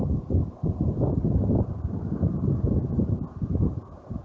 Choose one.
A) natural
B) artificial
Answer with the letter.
B